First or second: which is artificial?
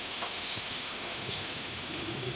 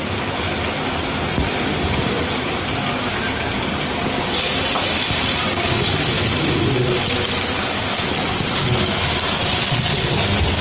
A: first